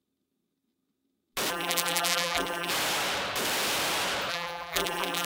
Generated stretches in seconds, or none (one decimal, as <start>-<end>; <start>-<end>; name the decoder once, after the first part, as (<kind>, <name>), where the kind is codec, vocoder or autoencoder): 1.5-2.7 (vocoder, BigVGAN v2); 4.3-5.3